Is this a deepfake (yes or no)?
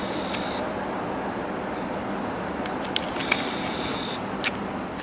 no